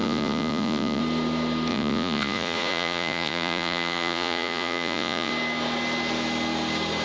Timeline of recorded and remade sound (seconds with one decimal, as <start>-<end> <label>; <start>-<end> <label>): 0.0-1.0 remade; 1.0-1.7 recorded; 1.7-5.3 remade; 5.3-7.0 recorded